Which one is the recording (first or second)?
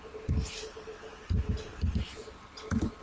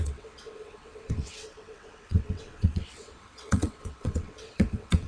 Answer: first